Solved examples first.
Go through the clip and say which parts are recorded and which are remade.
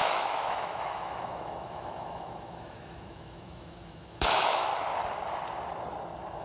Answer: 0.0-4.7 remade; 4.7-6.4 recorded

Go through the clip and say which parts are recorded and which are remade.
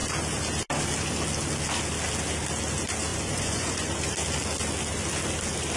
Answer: 0.0-3.1 recorded; 3.1-3.9 remade; 3.9-5.8 recorded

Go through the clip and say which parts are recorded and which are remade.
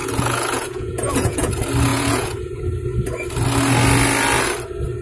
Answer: 0.0-1.5 remade; 1.5-1.9 recorded; 1.9-2.6 remade; 2.6-5.0 recorded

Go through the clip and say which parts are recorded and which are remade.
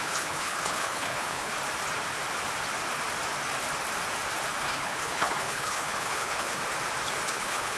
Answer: 0.0-1.5 remade; 1.5-4.6 recorded; 4.6-6.6 remade; 6.6-7.3 recorded; 7.3-7.8 remade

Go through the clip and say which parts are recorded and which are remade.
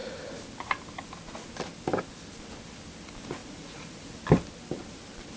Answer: 0.0-3.4 recorded; 3.4-4.1 remade; 4.1-5.4 recorded